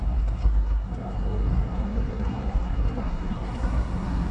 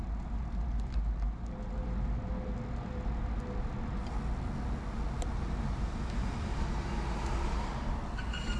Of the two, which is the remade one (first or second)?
first